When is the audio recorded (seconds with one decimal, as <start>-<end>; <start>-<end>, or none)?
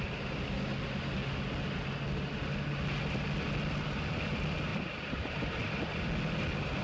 0.0-4.7; 5.3-6.8